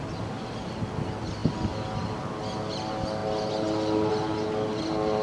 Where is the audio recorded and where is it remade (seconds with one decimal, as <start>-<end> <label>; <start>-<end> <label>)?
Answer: 0.0-5.2 recorded